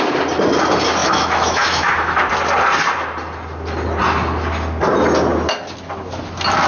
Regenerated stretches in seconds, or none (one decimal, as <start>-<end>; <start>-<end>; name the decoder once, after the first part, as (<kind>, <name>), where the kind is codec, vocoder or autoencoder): 1.0-2.2 (autoencoder, DAC-VAE)